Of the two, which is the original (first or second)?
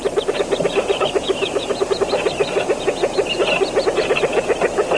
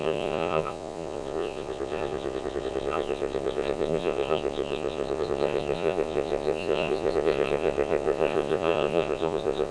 first